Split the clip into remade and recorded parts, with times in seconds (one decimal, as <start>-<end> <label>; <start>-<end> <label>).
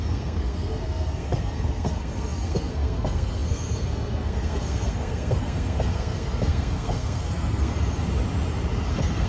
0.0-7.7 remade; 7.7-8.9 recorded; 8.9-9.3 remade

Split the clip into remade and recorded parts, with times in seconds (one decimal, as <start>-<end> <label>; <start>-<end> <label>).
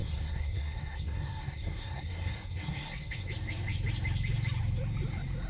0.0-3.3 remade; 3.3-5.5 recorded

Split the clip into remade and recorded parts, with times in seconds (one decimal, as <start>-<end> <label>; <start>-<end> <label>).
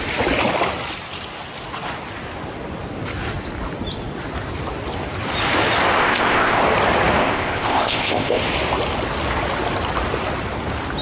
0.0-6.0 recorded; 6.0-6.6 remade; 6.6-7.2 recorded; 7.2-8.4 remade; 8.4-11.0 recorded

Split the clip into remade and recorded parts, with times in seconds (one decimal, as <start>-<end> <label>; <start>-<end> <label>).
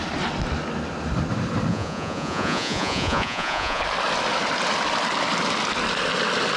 0.0-1.7 recorded; 1.7-3.8 remade; 3.8-6.6 recorded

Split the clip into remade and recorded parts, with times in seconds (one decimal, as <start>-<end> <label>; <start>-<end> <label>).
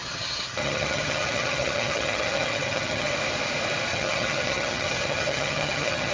0.0-3.1 remade; 3.1-3.9 recorded; 3.9-6.1 remade